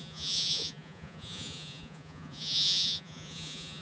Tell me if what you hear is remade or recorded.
remade